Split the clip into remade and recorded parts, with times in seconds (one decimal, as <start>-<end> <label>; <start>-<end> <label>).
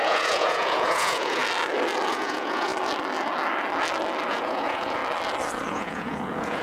0.0-1.4 remade; 1.4-2.1 recorded; 2.1-2.7 remade; 2.7-4.3 recorded; 4.3-5.0 remade; 5.0-5.7 recorded; 5.7-6.6 remade